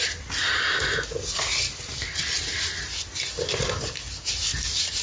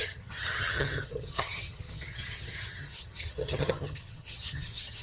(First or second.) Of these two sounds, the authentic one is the first